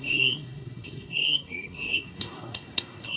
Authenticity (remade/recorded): remade